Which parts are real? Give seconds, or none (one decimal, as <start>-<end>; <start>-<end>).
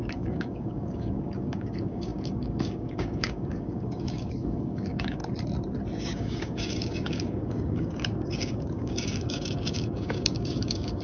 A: 5.2-6.0